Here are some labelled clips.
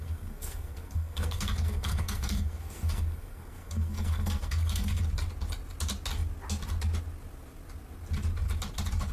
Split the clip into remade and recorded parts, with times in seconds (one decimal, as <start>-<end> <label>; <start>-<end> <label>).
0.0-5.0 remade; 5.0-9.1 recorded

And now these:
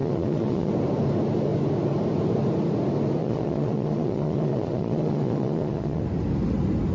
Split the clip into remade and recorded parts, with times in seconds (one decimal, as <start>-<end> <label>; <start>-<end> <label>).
0.0-0.7 remade; 0.7-3.2 recorded; 3.2-6.0 remade; 6.0-6.9 recorded

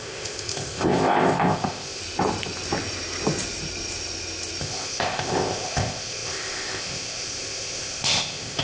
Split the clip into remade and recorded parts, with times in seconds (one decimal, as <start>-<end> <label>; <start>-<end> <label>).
0.0-2.0 remade; 2.0-4.6 recorded; 4.6-8.6 remade

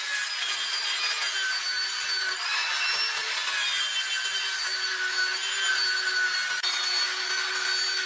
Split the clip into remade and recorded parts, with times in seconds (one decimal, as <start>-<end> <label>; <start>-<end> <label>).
0.0-8.1 recorded

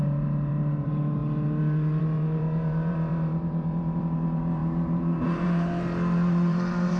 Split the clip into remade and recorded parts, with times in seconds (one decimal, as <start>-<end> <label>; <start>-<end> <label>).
0.0-1.2 remade; 1.2-2.0 recorded; 2.0-7.0 remade

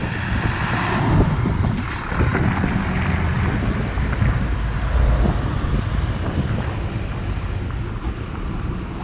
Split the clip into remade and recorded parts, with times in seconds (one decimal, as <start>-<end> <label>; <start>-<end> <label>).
0.0-9.0 recorded

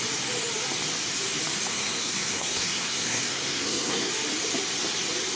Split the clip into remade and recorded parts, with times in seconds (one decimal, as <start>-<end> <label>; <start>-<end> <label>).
0.0-1.7 recorded; 1.7-4.1 remade; 4.1-5.4 recorded